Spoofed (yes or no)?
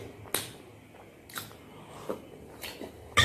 no